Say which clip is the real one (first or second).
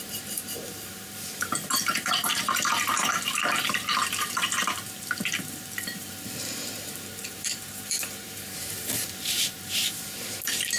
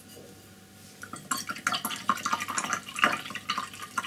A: second